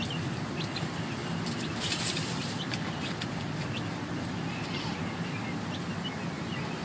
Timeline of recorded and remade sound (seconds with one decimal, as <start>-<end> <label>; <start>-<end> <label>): 0.0-6.8 recorded